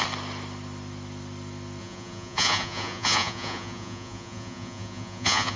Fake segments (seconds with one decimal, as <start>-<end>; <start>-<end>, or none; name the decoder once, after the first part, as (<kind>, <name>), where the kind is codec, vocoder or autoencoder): 1.8-5.6 (vocoder, Vocos)

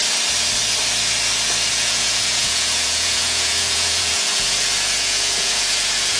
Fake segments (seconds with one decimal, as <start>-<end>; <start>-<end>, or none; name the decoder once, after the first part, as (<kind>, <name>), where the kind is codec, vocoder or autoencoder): 1.7-6.2 (vocoder, Vocos)

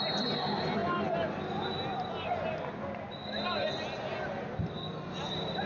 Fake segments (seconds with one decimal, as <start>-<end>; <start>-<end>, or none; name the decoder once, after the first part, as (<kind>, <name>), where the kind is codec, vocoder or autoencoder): none

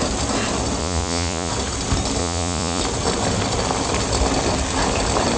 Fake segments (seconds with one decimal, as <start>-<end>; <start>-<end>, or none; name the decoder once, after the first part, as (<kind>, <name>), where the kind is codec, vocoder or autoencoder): 0.8-1.5 (vocoder, Vocos); 2.2-2.8